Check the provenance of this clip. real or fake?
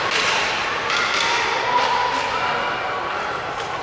fake